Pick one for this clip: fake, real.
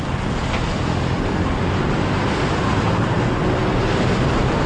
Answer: real